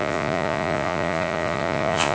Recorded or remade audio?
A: remade